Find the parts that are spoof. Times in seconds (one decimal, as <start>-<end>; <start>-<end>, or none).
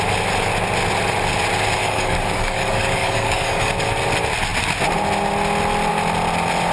1.8-3.7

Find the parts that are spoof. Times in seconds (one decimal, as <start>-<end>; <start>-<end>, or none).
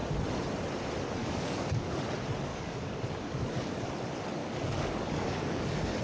1.2-2.0; 2.5-3.9; 4.4-6.0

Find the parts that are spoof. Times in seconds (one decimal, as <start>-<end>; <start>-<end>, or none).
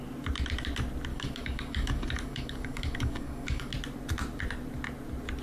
1.1-3.7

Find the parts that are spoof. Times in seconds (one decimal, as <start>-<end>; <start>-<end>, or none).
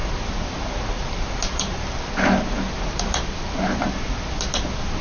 none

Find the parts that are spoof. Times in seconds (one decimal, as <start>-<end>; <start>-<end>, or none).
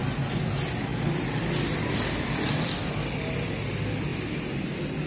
none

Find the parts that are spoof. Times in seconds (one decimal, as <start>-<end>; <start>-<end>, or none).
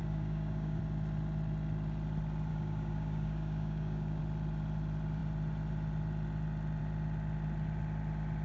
0.0-0.8; 2.5-4.2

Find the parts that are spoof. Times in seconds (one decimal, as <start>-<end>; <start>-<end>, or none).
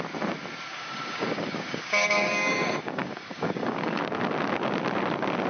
0.7-4.0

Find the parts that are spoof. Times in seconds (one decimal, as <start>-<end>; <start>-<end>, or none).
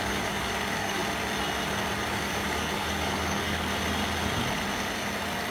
0.0-1.0; 2.0-3.7